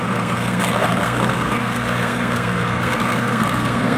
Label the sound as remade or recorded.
remade